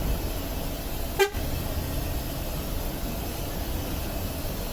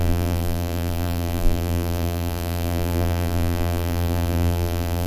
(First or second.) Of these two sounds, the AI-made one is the second